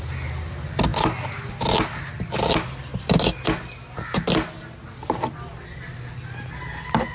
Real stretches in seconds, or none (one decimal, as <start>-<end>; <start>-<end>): 0.0-7.1